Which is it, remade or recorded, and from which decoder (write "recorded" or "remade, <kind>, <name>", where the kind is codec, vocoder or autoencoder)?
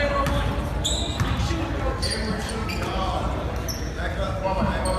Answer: recorded